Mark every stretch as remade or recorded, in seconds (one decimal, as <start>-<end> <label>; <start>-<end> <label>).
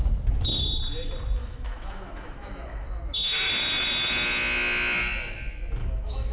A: 0.0-1.4 recorded; 1.4-3.5 remade; 3.5-5.8 recorded; 5.8-6.3 remade